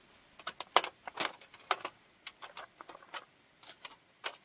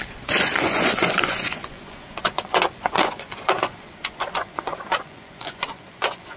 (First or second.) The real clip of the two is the first